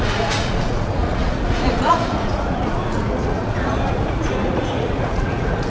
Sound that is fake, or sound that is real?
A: fake